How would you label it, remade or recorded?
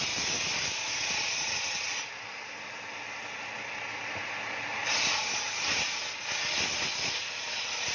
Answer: recorded